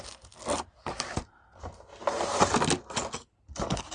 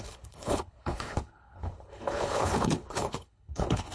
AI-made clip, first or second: second